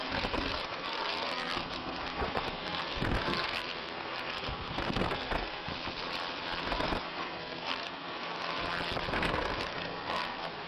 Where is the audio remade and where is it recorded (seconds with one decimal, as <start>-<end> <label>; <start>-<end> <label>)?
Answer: 0.0-5.7 remade; 5.7-6.6 recorded; 6.6-8.6 remade; 8.6-9.1 recorded; 9.1-10.7 remade